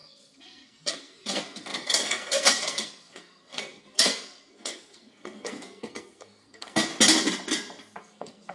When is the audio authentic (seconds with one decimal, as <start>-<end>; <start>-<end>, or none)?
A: 6.9-8.0